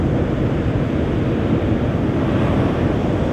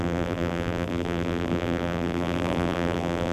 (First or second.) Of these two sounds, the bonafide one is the first